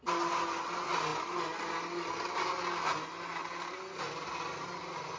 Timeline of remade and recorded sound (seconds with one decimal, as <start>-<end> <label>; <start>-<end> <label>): 0.0-5.2 recorded

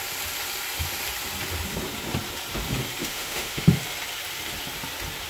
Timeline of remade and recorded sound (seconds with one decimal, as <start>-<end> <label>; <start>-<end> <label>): 0.0-3.0 recorded; 3.0-3.8 remade; 3.8-5.3 recorded

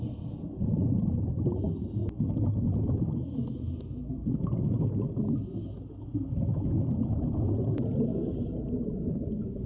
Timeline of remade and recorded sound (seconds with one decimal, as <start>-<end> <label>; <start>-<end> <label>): 0.0-2.0 recorded; 2.0-5.2 remade; 5.2-6.1 recorded; 6.1-7.5 remade; 7.5-9.7 recorded

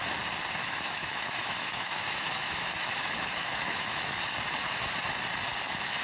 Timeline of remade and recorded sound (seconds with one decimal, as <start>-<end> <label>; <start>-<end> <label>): 0.0-0.6 recorded; 0.6-4.2 remade; 4.2-6.0 recorded

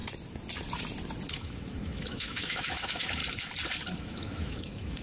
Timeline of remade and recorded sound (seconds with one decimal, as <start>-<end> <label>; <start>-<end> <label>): 0.0-1.3 recorded; 1.3-3.2 remade; 3.2-4.0 recorded; 4.0-5.0 remade

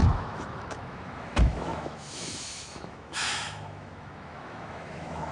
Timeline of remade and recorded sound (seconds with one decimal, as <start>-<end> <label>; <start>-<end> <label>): 0.0-5.3 remade

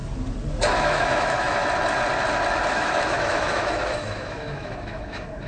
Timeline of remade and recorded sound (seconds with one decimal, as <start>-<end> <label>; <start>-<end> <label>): 0.0-0.7 recorded; 0.7-1.6 remade; 1.6-2.7 recorded; 2.7-5.5 remade